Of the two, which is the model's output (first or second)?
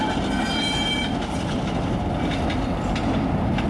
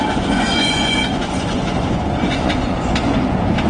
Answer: second